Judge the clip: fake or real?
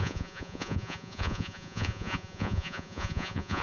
fake